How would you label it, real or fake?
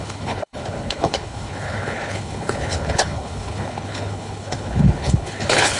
fake